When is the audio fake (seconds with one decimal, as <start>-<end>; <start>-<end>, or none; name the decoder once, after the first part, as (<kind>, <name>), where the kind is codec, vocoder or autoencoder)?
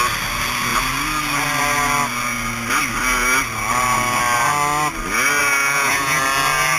5.4-6.2 (vocoder, Vocos)